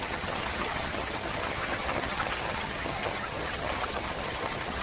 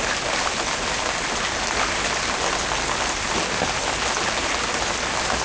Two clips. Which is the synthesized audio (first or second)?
first